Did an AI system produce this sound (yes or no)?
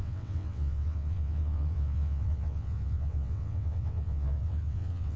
yes